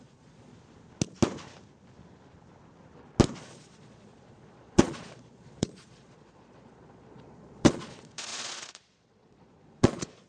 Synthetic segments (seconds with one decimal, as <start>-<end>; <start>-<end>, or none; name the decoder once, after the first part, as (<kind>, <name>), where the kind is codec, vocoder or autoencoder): 0.0-0.5 (vocoder, Vocos); 3.4-10.3